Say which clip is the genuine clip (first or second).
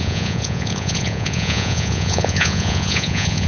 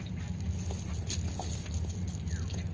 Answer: second